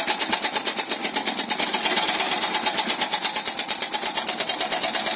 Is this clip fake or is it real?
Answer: real